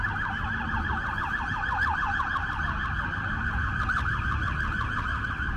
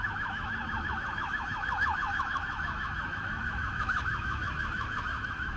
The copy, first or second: second